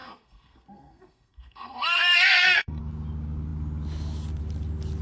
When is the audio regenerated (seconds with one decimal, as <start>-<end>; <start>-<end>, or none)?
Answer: 0.0-2.8